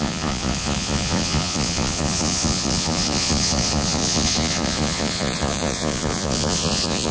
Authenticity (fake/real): fake